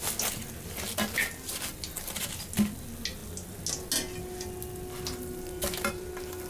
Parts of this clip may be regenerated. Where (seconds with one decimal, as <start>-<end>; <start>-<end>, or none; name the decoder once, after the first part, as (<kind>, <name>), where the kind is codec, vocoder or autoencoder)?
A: none